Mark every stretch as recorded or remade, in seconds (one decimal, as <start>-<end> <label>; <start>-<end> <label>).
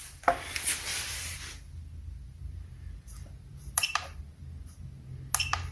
0.0-0.9 recorded; 0.9-1.4 remade; 1.4-2.3 recorded; 2.3-4.4 remade; 4.4-5.7 recorded